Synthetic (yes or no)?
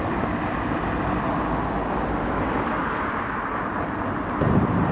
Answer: yes